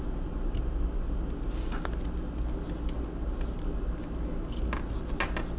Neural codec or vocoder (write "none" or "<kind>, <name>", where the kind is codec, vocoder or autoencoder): none